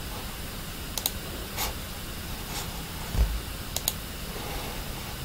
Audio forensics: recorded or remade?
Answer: recorded